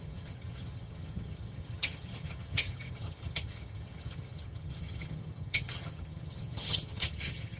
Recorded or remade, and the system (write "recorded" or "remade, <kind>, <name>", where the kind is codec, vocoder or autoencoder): remade, vocoder, HiFi-GAN